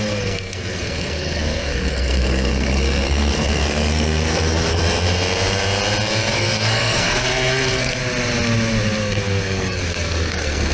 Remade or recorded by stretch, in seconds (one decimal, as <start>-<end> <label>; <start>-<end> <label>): 0.0-4.8 remade; 4.8-6.3 recorded; 6.3-8.0 remade; 8.0-9.0 recorded; 9.0-10.7 remade